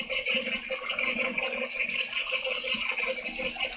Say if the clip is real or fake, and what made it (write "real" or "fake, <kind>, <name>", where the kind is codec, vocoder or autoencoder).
real